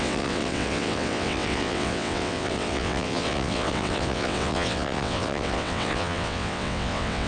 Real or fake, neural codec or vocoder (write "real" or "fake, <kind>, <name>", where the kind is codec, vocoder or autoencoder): fake, vocoder, WaveNeXt